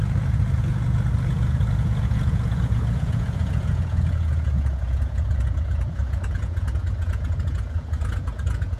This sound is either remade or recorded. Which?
remade